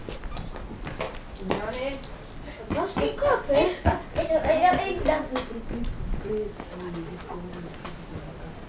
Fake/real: real